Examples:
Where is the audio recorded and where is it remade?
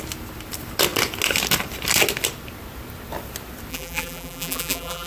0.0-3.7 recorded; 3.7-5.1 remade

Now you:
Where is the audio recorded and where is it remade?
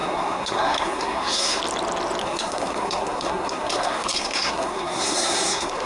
0.0-1.6 remade; 1.6-2.2 recorded; 2.2-5.9 remade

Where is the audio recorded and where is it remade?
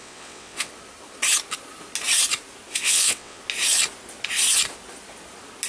0.0-0.7 remade; 0.7-2.7 recorded; 2.7-3.4 remade; 3.4-5.7 recorded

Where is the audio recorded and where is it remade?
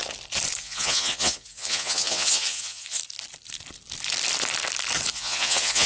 0.0-0.6 recorded; 0.6-3.0 remade; 3.0-5.1 recorded; 5.1-5.9 remade